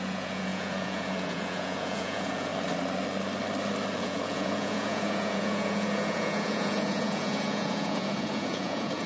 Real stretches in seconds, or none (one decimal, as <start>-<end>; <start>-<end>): 2.5-4.0